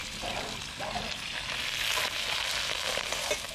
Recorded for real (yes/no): yes